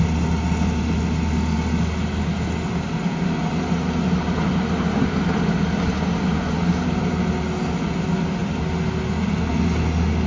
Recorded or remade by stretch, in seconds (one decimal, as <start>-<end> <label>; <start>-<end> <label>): 0.0-6.6 recorded; 6.6-7.3 remade; 7.3-10.3 recorded